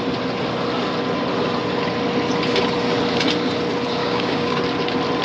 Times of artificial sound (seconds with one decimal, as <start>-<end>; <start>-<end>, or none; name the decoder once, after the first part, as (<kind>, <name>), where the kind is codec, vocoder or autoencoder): 4.0-4.6 (codec, DAC)